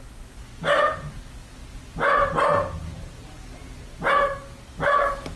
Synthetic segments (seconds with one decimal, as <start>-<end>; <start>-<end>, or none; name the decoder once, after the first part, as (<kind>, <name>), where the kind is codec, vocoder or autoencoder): 0.0-0.5 (codec, DAC); 1.1-1.6; 4.1-5.4